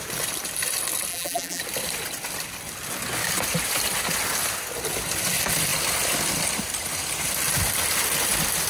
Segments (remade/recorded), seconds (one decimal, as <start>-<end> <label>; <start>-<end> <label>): 0.0-1.1 recorded; 1.1-1.6 remade; 1.6-8.7 recorded

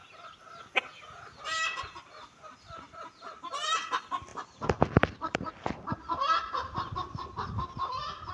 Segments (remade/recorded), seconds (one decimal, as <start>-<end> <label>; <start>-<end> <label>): 0.0-4.3 recorded; 4.3-7.3 remade; 7.3-8.3 recorded

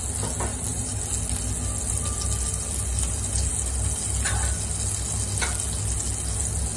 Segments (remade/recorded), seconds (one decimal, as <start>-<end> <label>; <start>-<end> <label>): 0.0-0.5 recorded; 0.5-1.0 remade; 1.0-6.8 recorded

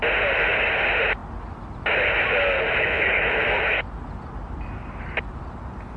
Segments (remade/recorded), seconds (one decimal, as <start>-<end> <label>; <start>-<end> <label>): 0.0-6.0 recorded

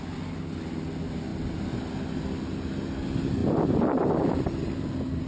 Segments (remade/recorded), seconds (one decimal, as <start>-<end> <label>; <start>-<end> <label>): 0.0-5.3 recorded